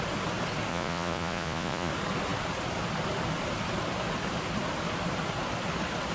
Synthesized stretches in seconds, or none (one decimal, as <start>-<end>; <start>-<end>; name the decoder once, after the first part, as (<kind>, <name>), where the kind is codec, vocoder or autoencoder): 0.7-1.9 (vocoder, Vocos)